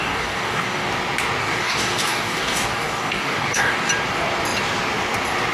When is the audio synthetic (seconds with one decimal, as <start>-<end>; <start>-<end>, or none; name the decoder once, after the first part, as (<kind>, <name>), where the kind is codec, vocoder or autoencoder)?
0.0-0.9 (codec, DAC); 1.4-3.9